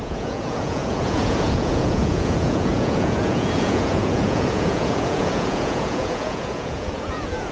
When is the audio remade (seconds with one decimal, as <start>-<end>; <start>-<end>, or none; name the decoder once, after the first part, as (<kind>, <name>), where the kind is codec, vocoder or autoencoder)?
0.0-7.5 (vocoder, Vocos)